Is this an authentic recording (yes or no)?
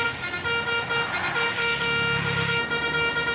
yes